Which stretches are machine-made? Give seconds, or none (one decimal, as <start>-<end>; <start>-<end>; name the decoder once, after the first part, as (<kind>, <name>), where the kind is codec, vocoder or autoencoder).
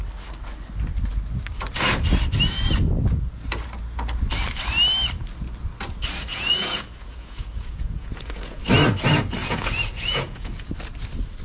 6.3-8.6 (vocoder, Vocos); 9.4-10.7